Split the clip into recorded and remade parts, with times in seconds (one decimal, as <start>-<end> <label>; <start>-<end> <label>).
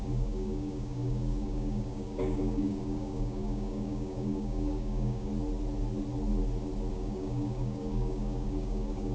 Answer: 0.0-5.3 remade; 5.3-6.9 recorded; 6.9-9.1 remade